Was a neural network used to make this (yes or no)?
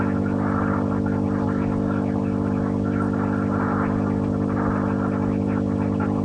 no